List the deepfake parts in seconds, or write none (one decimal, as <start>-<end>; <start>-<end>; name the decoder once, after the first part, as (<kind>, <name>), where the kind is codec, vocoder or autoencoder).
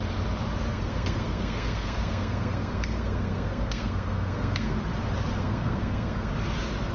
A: 0.7-4.8 (codec, SNAC); 5.3-6.3